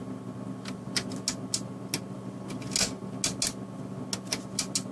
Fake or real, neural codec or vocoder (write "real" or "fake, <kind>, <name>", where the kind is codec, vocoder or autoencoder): real